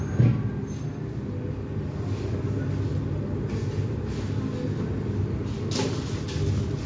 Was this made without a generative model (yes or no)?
yes